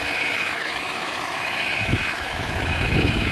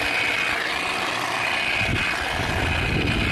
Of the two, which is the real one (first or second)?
second